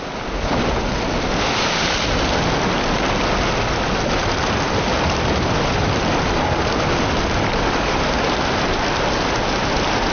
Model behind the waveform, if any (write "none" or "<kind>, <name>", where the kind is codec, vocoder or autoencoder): none